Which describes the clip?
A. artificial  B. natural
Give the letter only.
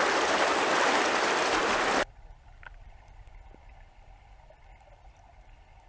B